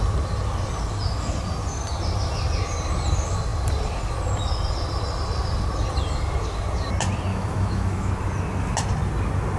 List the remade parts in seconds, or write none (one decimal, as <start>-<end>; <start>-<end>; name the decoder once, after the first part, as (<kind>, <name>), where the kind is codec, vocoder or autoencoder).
7.3-8.1 (autoencoder, DAC-VAE)

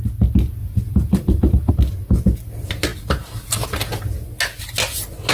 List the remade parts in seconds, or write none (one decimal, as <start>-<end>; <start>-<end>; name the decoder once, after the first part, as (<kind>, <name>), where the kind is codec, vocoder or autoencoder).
0.6-1.7 (vocoder, BigVGAN v2)

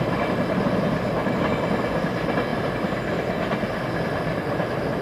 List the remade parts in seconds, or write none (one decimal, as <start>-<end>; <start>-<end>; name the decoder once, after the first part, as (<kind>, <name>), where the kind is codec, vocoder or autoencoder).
none